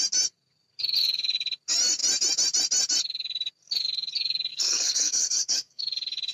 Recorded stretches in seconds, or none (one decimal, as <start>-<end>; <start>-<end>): 0.0-4.5; 5.8-6.3